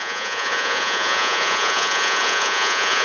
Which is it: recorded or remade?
remade